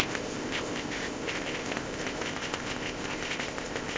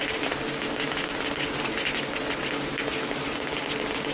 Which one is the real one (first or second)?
second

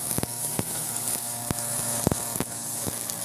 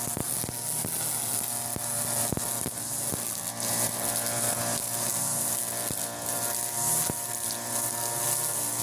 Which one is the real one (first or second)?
second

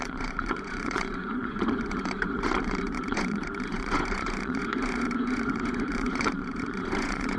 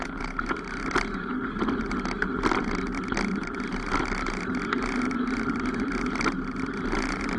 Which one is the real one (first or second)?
second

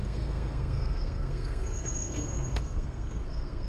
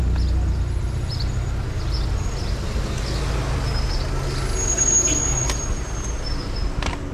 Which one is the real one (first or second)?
second